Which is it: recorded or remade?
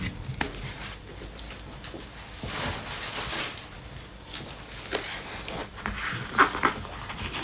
recorded